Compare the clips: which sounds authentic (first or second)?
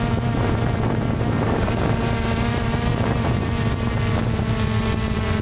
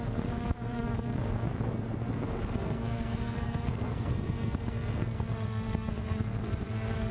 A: first